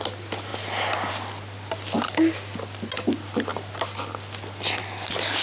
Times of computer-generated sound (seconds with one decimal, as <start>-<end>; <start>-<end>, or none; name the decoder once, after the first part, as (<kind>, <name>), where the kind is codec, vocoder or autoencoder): none